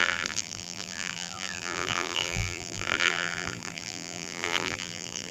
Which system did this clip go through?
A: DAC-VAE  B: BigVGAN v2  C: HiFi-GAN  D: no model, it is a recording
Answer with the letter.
B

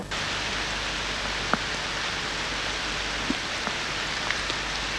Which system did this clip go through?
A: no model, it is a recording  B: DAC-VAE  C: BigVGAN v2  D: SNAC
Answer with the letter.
A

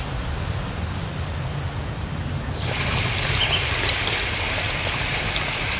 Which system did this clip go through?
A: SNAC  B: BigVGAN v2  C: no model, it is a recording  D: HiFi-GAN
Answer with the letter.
B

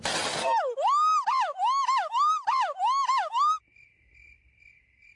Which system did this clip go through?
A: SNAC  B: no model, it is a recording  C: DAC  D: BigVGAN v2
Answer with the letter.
B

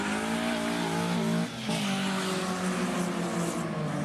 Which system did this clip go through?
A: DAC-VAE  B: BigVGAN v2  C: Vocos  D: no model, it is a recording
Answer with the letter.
D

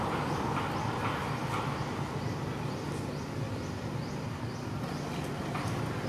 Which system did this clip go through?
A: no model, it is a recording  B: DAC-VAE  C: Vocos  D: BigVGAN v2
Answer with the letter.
A